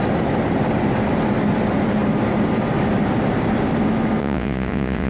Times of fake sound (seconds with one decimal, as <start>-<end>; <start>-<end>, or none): 4.2-5.1